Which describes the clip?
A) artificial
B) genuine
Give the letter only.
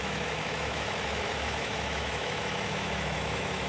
A